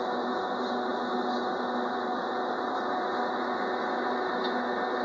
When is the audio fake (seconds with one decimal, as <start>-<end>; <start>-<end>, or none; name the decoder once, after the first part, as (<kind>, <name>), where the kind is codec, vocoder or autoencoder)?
1.5-4.4 (vocoder, BigVGAN v2)